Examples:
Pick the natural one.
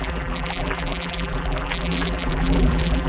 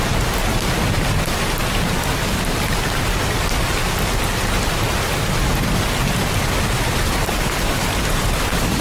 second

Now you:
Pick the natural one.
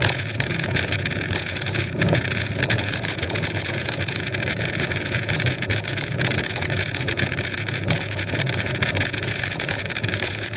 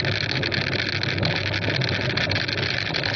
second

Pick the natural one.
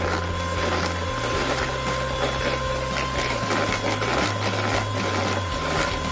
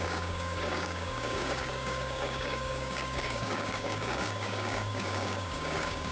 first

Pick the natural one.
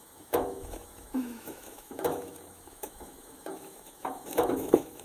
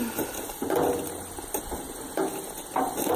second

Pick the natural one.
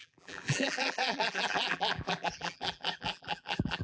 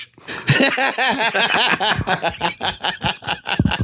second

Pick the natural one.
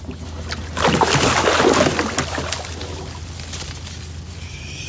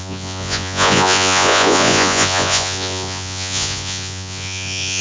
first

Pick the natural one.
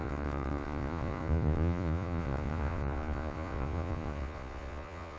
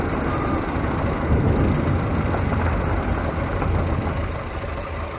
second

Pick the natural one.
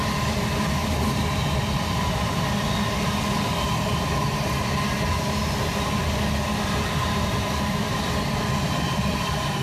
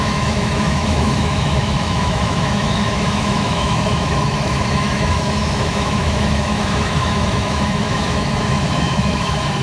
first